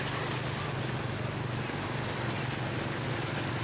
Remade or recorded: recorded